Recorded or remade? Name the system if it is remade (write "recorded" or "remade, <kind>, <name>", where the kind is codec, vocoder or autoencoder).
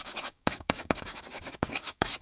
remade, codec, DAC